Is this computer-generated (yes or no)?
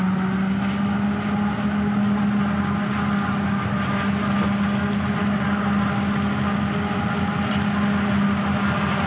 no